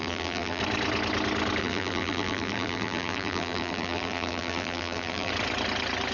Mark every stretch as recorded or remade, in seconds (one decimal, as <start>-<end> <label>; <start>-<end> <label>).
0.0-0.6 remade; 0.6-1.6 recorded; 1.6-5.3 remade; 5.3-6.1 recorded